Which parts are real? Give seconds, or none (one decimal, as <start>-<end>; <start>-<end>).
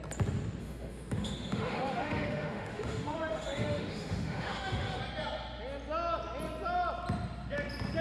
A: 0.0-0.6; 5.0-8.0